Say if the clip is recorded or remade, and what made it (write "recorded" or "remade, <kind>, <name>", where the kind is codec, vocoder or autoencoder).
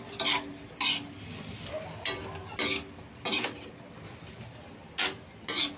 recorded